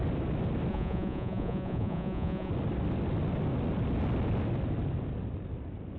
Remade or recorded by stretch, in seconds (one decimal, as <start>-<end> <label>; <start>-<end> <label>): 0.0-0.7 recorded; 0.7-2.5 remade; 2.5-6.0 recorded